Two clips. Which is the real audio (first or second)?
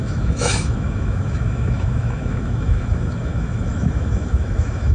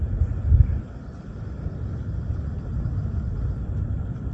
second